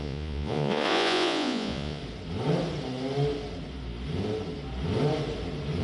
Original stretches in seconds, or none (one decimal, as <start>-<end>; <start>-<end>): 2.0-5.8